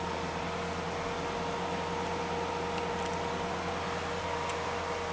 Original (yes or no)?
yes